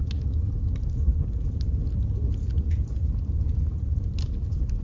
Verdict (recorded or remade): recorded